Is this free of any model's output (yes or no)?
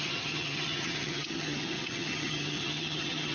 no